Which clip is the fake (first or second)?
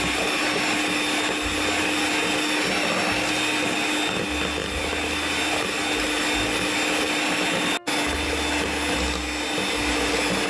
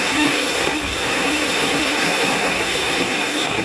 second